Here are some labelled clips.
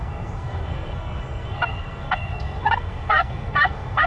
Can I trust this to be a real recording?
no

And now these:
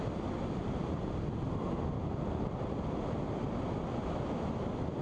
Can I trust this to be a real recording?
yes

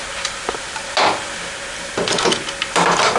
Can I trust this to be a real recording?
yes